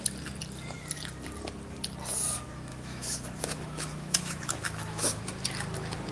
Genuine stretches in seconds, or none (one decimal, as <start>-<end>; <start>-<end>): 0.0-2.7; 5.2-6.1

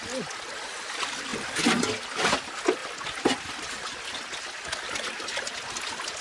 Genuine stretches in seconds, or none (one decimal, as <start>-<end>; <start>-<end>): 0.0-6.2

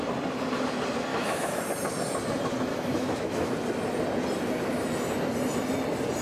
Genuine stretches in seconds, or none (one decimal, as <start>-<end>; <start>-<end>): 0.0-1.1; 1.6-2.7; 3.5-6.2

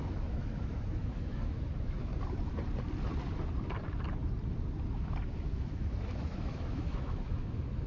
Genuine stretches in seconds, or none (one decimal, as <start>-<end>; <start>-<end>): 2.1-5.3

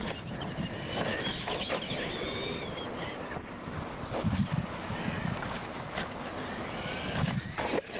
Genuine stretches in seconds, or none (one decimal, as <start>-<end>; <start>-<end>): 0.0-1.1; 1.7-8.0

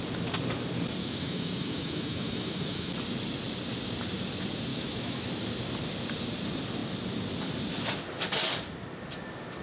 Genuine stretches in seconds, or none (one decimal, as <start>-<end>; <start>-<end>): 0.0-1.0; 2.9-4.7; 5.3-9.6

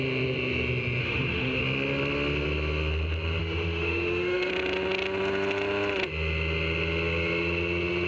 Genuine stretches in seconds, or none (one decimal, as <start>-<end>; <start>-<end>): 0.0-1.0; 1.6-3.4; 4.5-8.1

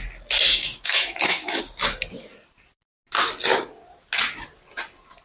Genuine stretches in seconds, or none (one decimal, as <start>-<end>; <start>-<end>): 0.0-0.5; 1.6-5.2